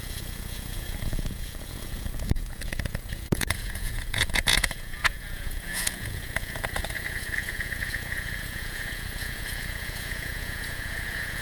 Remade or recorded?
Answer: remade